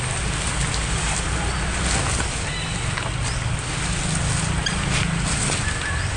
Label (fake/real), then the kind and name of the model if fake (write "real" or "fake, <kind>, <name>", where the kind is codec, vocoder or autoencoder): real